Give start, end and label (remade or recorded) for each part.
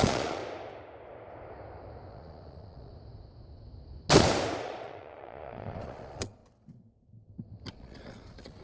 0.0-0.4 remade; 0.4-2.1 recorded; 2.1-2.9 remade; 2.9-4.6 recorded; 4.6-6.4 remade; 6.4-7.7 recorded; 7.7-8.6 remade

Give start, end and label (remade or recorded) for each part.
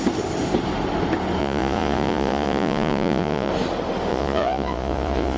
0.0-1.4 recorded; 1.4-3.5 remade; 3.5-4.1 recorded; 4.1-5.4 remade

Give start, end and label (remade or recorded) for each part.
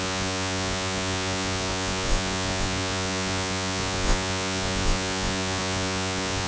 0.0-6.5 remade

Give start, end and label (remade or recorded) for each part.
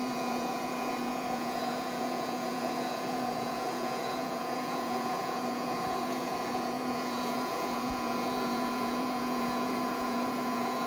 0.0-10.9 remade